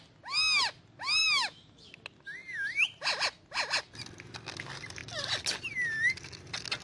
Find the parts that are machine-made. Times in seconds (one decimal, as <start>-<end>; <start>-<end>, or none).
1.2-1.9